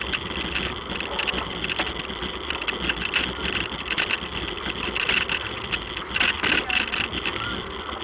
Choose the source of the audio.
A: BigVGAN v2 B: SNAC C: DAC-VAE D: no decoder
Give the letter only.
D